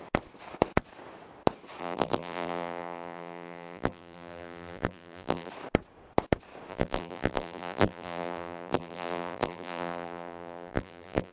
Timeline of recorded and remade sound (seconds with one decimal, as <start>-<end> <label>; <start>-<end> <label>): 0.0-1.8 recorded; 1.8-5.5 remade; 5.5-6.7 recorded; 6.7-11.3 remade